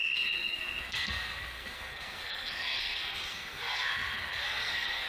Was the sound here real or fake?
fake